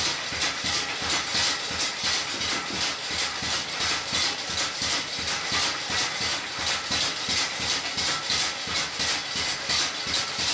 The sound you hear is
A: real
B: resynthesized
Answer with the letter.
A